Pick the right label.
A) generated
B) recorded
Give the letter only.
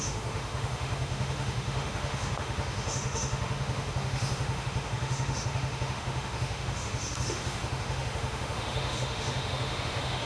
A